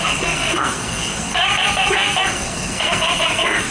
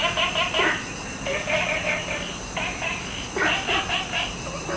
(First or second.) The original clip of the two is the second